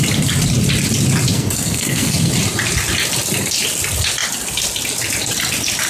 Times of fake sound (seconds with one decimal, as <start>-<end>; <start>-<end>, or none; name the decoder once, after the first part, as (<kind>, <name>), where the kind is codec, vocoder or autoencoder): 1.3-2.3 (codec, SNAC)